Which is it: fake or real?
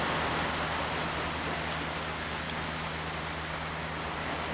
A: real